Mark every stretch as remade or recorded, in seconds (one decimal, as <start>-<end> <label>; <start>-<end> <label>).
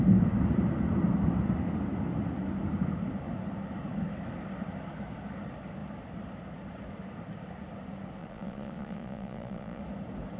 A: 0.0-8.2 recorded; 8.2-9.8 remade; 9.8-10.4 recorded